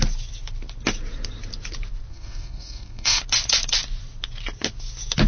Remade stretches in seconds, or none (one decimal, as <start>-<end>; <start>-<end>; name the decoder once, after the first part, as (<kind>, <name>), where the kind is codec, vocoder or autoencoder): 2.1-3.2 (codec, SNAC)